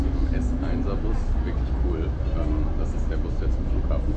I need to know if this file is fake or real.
real